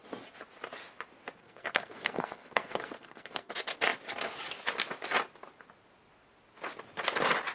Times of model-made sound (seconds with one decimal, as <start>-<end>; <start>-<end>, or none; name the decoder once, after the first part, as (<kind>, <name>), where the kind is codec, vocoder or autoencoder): 1.4-3.5 (codec, SNAC)